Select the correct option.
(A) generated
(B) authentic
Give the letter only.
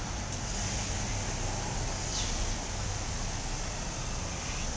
B